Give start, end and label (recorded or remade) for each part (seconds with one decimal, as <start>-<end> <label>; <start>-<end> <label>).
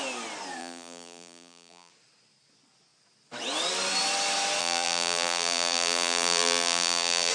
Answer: 0.0-0.6 recorded; 0.6-1.9 remade; 1.9-4.6 recorded; 4.6-7.3 remade